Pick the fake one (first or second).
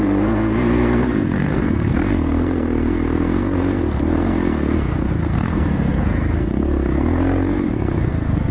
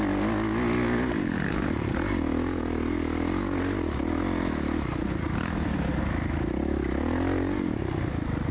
first